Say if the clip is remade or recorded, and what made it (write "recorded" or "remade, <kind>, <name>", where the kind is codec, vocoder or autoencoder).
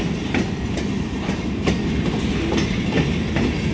recorded